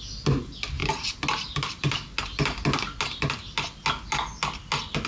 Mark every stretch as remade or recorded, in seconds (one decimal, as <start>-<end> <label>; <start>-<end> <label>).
0.0-5.1 recorded